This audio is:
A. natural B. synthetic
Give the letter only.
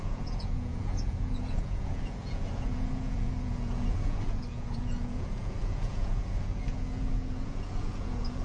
B